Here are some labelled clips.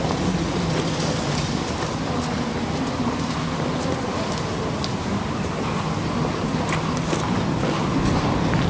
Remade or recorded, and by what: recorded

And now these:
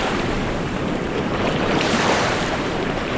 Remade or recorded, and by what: remade, vocoder, BigVGAN v2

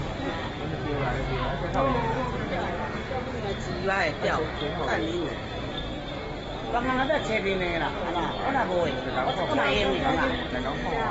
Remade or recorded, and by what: recorded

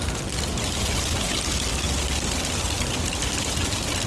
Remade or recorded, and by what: recorded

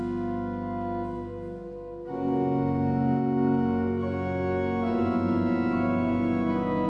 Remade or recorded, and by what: recorded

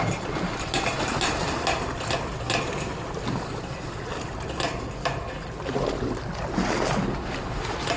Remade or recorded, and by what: recorded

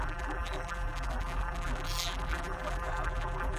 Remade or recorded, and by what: remade, vocoder, BigVGAN v2